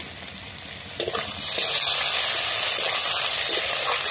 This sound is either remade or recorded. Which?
recorded